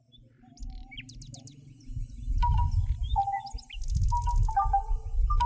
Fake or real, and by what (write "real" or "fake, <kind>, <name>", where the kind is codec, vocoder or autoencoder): real